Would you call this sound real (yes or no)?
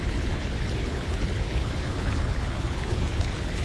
no